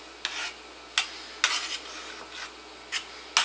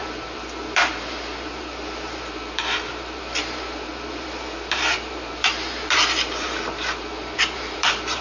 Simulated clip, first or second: second